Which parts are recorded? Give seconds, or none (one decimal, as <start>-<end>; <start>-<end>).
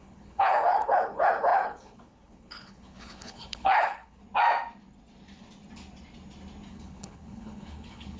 4.2-6.7